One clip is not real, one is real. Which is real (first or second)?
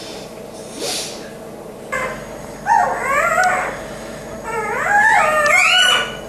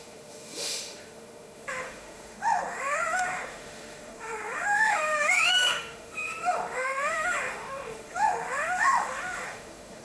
first